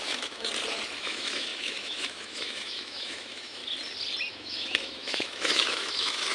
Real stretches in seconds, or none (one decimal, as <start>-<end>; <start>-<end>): 0.5-1.0; 3.6-4.3